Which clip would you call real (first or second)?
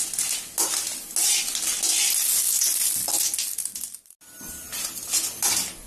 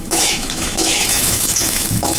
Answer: first